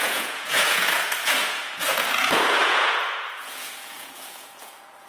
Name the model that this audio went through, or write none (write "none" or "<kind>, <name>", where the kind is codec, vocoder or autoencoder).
vocoder, Vocos